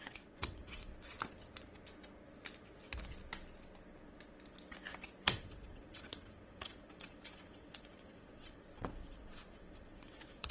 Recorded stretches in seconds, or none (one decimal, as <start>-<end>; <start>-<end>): 0.9-5.2